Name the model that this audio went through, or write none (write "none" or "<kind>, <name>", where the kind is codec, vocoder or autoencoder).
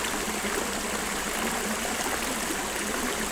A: none